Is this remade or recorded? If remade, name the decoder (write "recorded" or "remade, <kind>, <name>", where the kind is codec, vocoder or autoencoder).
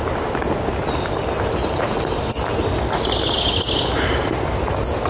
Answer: recorded